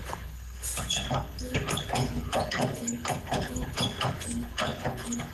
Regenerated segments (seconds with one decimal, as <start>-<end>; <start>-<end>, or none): 0.0-5.3